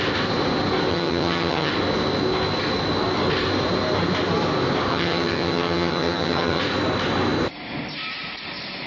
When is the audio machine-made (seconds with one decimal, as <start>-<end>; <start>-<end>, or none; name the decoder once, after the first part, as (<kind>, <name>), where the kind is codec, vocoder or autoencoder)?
0.9-1.7 (vocoder, HiFi-GAN); 4.9-6.6